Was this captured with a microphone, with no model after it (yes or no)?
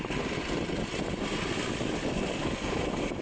yes